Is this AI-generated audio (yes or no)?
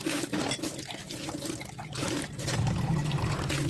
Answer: no